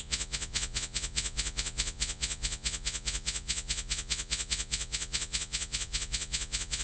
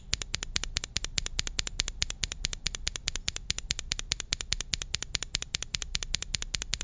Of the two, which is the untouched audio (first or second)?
second